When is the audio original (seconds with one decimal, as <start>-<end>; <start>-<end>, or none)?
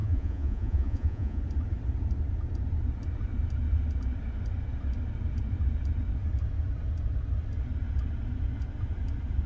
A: 1.4-9.5